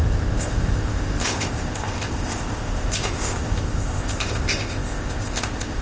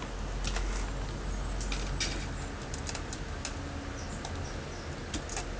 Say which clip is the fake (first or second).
first